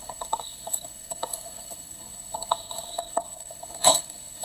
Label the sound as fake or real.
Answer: fake